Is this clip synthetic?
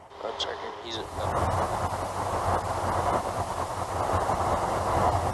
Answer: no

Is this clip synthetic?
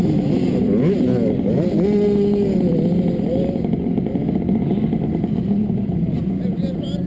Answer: no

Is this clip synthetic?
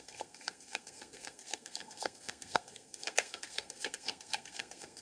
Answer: yes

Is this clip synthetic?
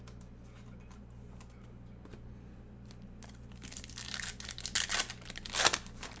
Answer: no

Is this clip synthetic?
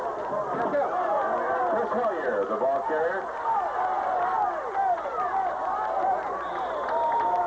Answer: no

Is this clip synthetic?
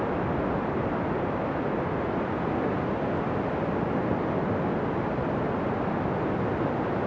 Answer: no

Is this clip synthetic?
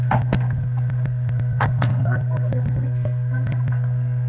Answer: yes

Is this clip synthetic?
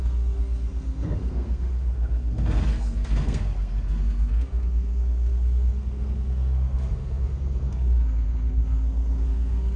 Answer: yes